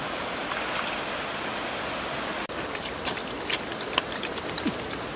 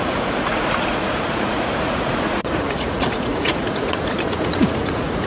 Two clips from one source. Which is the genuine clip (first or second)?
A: first